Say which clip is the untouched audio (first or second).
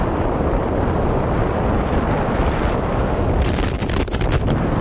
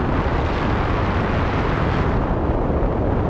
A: second